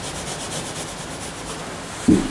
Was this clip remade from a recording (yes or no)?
no